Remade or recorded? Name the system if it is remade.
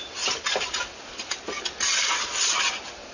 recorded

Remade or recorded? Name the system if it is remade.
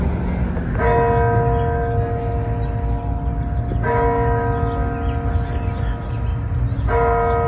recorded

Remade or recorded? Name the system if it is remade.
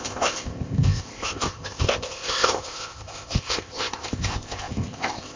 remade, codec, ZipCodec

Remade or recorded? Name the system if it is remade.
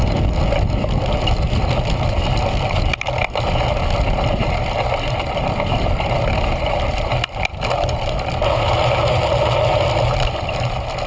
recorded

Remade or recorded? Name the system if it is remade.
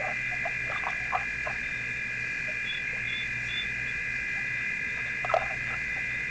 recorded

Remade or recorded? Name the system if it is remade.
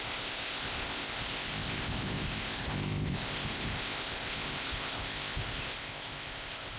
remade, codec, ZipCodec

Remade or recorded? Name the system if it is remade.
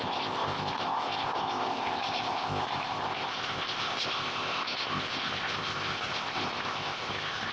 remade, codec, ZipCodec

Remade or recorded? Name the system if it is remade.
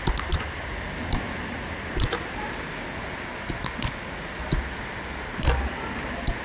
recorded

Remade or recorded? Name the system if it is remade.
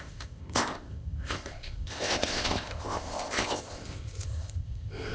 remade, codec, ZipCodec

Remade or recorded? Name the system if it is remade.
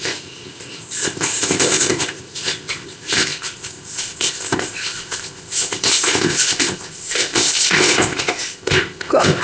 remade, codec, ZipCodec